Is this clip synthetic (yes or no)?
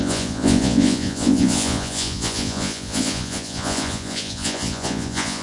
yes